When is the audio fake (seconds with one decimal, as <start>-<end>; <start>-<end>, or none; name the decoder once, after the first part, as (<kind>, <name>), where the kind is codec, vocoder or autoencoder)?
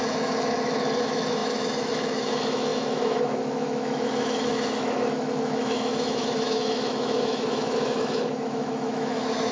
0.0-9.5 (autoencoder, DAC-VAE)